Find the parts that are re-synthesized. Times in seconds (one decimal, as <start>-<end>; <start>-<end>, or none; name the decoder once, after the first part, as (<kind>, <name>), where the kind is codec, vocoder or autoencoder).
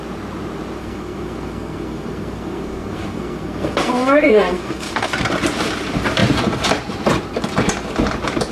0.8-5.1 (codec, SNAC)